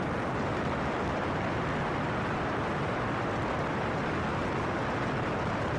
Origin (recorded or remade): recorded